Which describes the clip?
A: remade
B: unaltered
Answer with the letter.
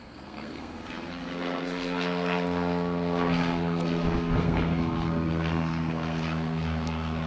A